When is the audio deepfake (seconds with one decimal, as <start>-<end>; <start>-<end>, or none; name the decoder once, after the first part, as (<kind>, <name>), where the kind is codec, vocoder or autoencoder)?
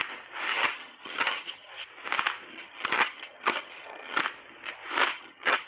0.5-1.7 (vocoder, HiFi-GAN); 2.5-4.2; 5.1-5.7